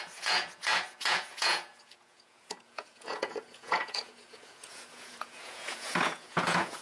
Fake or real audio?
fake